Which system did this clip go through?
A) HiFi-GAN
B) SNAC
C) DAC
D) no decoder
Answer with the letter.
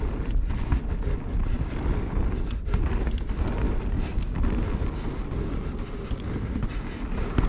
D